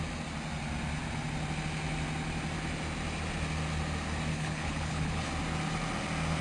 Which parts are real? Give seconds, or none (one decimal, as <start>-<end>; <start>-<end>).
0.0-4.3; 5.3-6.4